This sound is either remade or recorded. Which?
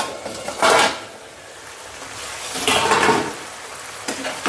recorded